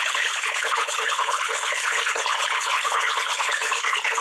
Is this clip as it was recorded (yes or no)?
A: no